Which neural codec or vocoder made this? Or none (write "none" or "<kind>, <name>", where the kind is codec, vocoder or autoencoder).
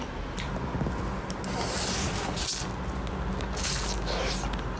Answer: none